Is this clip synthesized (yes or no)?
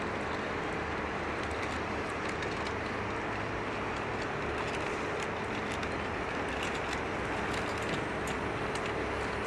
no